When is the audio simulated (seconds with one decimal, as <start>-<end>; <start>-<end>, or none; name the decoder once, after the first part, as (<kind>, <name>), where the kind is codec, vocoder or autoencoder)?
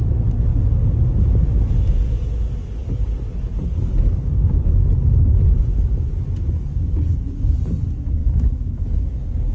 8.2-8.8 (autoencoder, DAC-VAE)